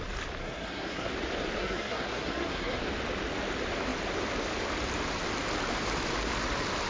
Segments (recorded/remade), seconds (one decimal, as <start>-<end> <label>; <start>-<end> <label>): 0.0-0.4 recorded; 0.4-1.1 remade; 1.1-1.6 recorded; 1.6-2.8 remade; 2.8-6.9 recorded